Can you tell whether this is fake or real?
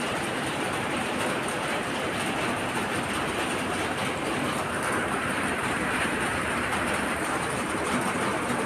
fake